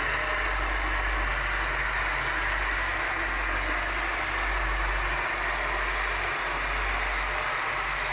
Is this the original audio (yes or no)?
yes